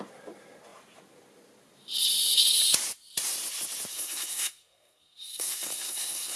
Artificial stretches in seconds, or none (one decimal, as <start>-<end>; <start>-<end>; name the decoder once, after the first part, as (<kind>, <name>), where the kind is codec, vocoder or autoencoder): 3.9-6.4 (codec, SNAC)